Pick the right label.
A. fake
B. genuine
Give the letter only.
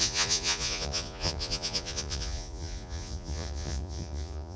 A